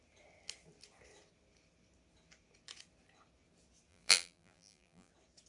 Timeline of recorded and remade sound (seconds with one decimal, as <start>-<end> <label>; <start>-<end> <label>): 0.0-3.9 recorded; 3.9-5.1 remade; 5.1-5.5 recorded